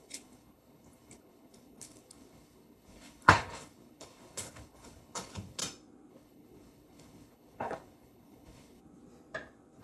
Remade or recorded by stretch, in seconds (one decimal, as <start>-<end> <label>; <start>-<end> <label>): 0.0-5.6 remade; 5.6-6.1 recorded; 6.1-8.8 remade; 8.8-9.8 recorded